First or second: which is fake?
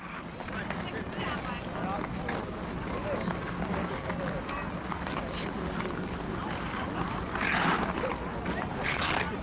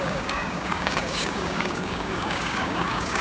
second